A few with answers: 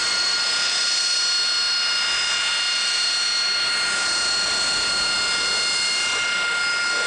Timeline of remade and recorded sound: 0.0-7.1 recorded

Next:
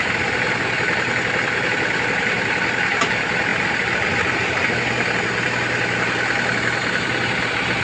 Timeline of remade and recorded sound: 0.0-7.8 recorded

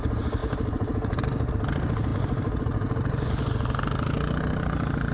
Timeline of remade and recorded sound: 0.0-5.1 recorded

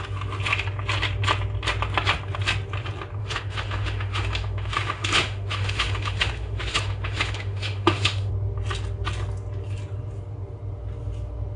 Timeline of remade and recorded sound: 0.0-3.2 recorded; 3.2-8.3 remade; 8.3-11.6 recorded

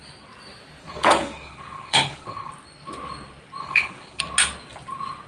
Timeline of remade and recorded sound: 0.0-0.8 recorded; 0.8-2.5 remade; 2.5-3.6 recorded; 3.6-4.2 remade; 4.2-5.3 recorded

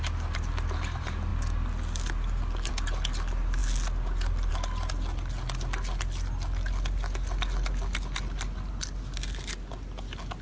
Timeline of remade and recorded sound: 0.0-10.4 recorded

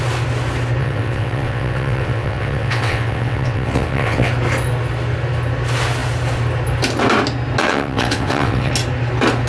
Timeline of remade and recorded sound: 0.0-0.8 recorded; 0.8-4.3 remade; 4.3-7.6 recorded; 7.6-8.7 remade; 8.7-9.5 recorded